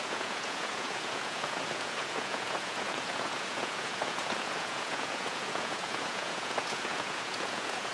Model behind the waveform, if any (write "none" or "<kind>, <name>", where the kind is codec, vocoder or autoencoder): vocoder, Vocos